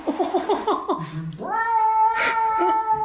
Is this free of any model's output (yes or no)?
yes